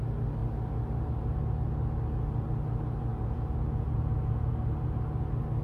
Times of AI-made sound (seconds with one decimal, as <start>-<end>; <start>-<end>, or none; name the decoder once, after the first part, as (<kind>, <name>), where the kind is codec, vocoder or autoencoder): 3.1-4.5 (vocoder, Vocos)